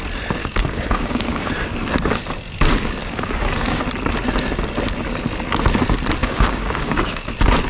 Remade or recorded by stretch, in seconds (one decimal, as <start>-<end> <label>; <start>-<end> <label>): 0.0-0.4 recorded; 0.4-1.5 remade; 1.5-3.0 recorded; 3.0-3.8 remade; 3.8-6.2 recorded; 6.2-7.3 remade; 7.3-7.7 recorded